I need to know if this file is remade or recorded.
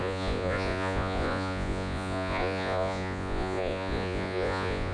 remade